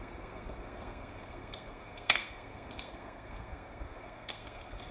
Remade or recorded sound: remade